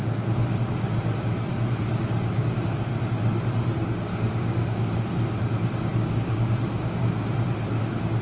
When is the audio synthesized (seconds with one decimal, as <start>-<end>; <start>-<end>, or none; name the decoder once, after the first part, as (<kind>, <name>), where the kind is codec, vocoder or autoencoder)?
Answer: 4.1-5.0 (codec, DAC); 5.9-6.5